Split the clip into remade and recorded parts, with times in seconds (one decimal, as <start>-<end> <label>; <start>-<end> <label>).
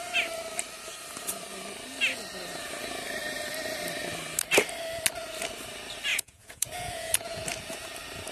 0.0-6.1 recorded; 6.1-7.4 remade; 7.4-8.3 recorded